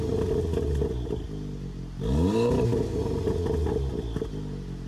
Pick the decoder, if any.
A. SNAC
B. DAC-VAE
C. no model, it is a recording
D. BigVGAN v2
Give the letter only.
C